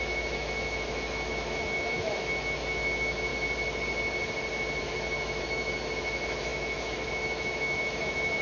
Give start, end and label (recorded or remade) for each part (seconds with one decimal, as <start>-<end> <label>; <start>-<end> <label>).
0.0-3.3 remade; 3.3-4.8 recorded; 4.8-8.4 remade